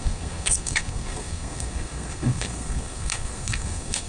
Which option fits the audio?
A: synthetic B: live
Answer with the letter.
A